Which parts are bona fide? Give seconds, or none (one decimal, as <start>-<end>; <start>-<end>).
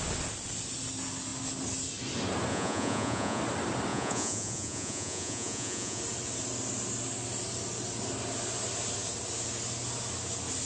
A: 0.0-2.5; 3.4-3.9; 6.0-10.6